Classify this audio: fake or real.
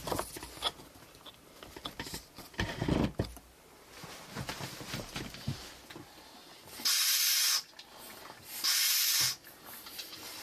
real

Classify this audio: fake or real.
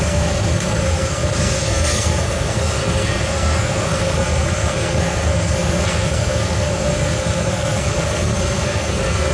fake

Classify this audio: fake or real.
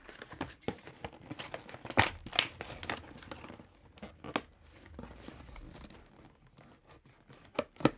real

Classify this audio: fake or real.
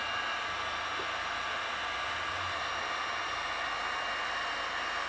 real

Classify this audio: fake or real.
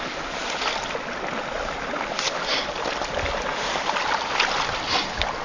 real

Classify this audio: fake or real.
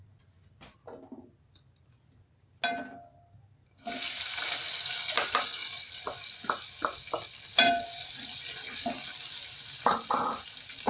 real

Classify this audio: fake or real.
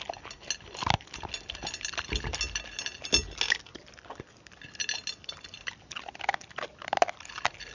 real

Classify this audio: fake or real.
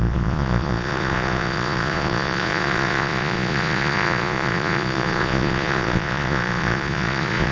fake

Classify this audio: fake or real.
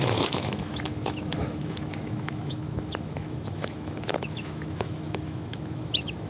fake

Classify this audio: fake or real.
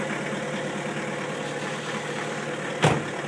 real